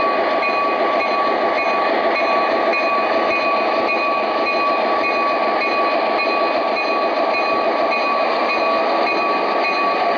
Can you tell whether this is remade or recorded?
recorded